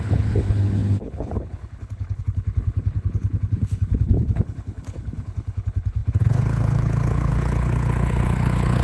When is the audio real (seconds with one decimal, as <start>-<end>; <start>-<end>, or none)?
none